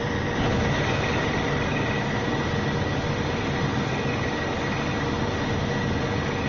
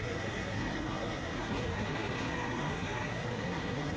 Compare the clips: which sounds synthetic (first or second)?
second